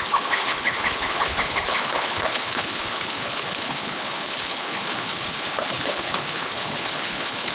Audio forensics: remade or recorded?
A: remade